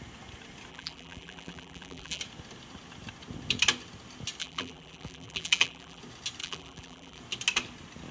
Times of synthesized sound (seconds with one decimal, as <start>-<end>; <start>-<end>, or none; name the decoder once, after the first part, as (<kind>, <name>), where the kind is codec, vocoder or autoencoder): 0.7-2.2 (vocoder, BigVGAN v2); 4.4-6.0; 6.4-7.2